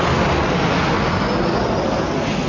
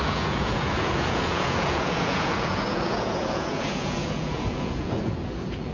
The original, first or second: first